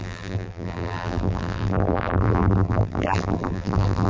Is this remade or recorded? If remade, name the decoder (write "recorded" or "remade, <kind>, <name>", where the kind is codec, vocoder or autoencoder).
remade, vocoder, BigVGAN v2